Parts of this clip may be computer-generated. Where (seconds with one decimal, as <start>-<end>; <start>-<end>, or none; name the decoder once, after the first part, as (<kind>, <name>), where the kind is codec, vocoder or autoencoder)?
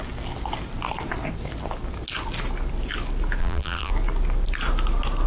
3.4-3.9 (vocoder, BigVGAN v2)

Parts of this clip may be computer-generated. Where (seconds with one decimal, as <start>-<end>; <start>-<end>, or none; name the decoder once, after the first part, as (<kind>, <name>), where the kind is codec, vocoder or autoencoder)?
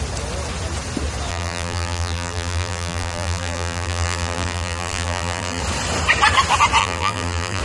1.3-5.6 (vocoder, BigVGAN v2); 6.8-7.6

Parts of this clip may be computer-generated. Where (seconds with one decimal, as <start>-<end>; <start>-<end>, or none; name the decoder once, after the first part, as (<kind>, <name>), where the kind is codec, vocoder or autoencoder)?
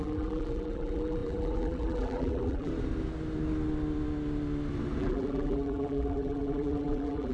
0.0-2.7 (vocoder, BigVGAN v2); 5.0-7.3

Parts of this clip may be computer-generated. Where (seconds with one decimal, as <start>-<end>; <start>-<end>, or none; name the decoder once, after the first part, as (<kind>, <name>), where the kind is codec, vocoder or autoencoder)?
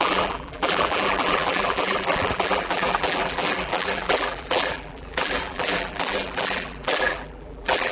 0.0-7.9 (vocoder, BigVGAN v2)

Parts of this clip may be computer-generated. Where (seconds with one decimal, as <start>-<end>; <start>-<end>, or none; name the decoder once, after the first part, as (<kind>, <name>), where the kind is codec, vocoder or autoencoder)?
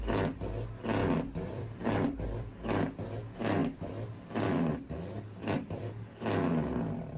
1.0-2.5 (vocoder, BigVGAN v2); 3.6-4.9; 5.4-5.9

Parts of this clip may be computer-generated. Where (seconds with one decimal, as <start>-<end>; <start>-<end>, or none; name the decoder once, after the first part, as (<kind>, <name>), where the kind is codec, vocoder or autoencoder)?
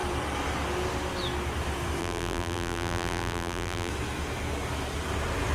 2.0-3.9 (vocoder, BigVGAN v2)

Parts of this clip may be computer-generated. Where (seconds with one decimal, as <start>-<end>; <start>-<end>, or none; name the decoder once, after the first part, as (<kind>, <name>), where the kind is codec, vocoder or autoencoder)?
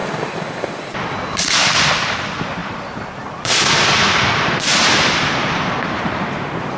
2.2-6.8 (vocoder, BigVGAN v2)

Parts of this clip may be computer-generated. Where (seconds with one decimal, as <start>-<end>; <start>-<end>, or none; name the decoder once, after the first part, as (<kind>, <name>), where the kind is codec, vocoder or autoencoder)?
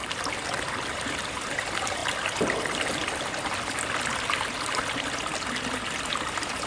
0.7-2.0 (vocoder, BigVGAN v2); 6.0-6.7